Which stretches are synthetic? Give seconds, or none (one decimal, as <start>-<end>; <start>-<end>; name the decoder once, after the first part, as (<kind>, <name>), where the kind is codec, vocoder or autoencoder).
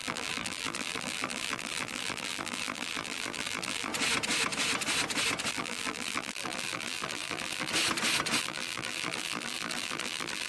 0.0-3.9 (vocoder, BigVGAN v2); 5.5-7.7; 8.4-10.5